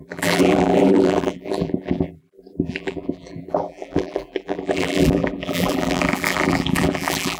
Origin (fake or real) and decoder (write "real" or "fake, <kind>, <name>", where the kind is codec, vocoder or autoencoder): fake, vocoder, BigVGAN v2